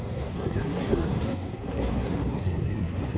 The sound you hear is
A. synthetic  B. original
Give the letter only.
A